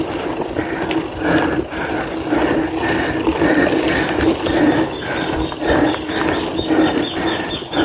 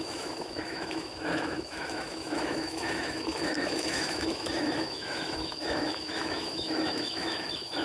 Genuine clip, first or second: first